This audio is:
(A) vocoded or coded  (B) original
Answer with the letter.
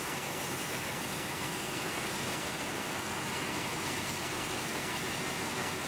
A